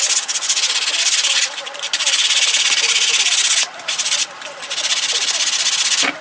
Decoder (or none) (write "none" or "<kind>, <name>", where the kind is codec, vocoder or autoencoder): none